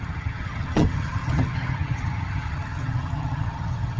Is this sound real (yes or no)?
no